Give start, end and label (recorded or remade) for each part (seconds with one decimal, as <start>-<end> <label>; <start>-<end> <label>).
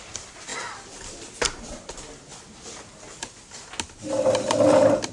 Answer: 0.0-5.1 recorded